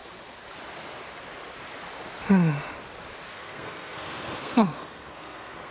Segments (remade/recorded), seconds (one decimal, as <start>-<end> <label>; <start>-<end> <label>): 0.0-3.3 recorded; 3.3-5.7 remade